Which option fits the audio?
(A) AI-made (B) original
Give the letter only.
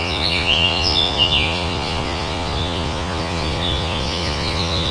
A